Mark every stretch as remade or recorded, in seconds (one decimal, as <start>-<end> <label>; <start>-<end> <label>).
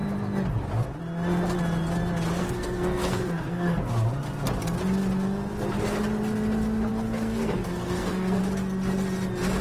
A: 0.0-2.4 recorded; 2.4-3.9 remade; 3.9-6.9 recorded; 6.9-8.4 remade; 8.4-9.6 recorded